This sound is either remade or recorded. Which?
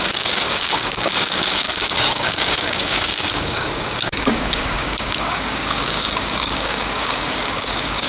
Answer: remade